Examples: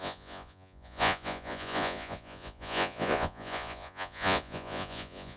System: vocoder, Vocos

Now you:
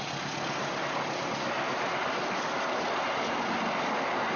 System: none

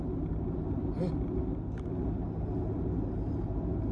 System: none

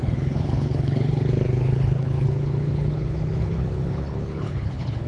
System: codec, HILCodec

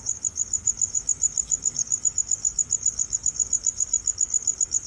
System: codec, DAC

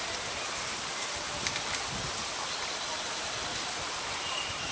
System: none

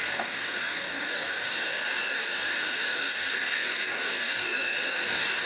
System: codec, DAC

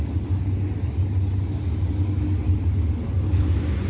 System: none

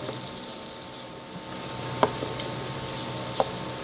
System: none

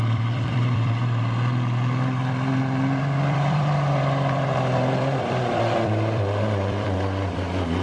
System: vocoder, BigVGAN v2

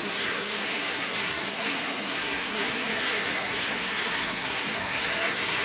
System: codec, SNAC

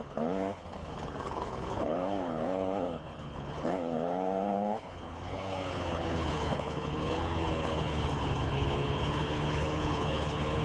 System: codec, HILCodec